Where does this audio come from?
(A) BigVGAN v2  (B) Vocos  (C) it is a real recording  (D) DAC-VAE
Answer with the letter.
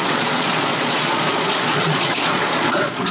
B